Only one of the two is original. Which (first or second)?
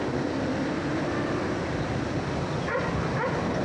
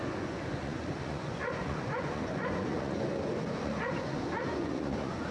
first